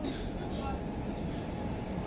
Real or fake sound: real